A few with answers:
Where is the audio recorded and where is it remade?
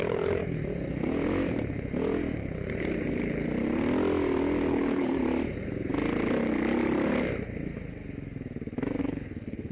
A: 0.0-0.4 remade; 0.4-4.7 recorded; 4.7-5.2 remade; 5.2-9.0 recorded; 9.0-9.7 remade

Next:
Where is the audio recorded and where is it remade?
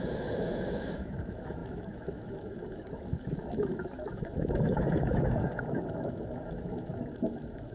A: 0.0-7.7 remade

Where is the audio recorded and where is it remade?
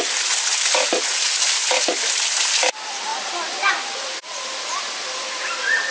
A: 0.0-5.9 recorded